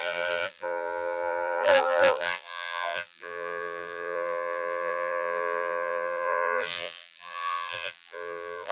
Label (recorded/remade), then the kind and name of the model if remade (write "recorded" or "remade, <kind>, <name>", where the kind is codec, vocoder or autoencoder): remade, vocoder, BigVGAN v2